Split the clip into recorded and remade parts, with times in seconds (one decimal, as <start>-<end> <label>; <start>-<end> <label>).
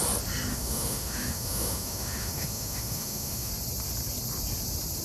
0.0-0.5 recorded; 0.5-3.5 remade; 3.5-5.0 recorded